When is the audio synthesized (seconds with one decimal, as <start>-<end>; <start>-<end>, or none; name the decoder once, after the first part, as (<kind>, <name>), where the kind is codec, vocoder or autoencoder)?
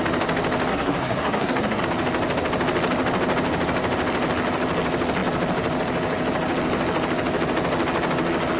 0.7-1.8 (codec, SNAC)